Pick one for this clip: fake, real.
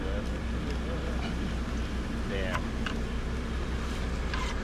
real